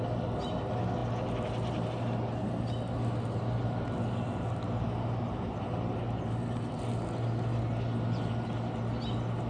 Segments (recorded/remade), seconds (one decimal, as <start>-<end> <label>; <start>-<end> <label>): 0.0-9.5 recorded